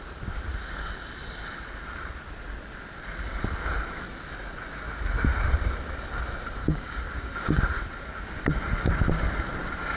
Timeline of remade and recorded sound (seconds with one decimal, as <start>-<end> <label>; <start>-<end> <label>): 0.0-6.6 recorded; 6.6-7.6 remade; 7.6-10.0 recorded